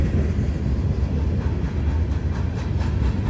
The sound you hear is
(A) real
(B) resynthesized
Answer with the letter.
A